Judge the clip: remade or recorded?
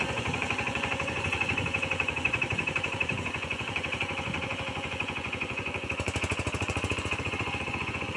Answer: remade